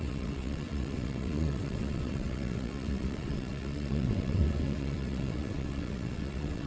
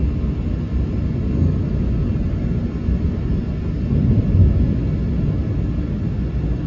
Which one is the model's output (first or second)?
first